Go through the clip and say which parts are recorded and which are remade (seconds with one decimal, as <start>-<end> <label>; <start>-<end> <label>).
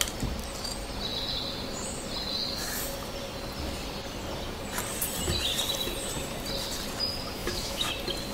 0.0-7.4 recorded; 7.4-7.9 remade; 7.9-8.3 recorded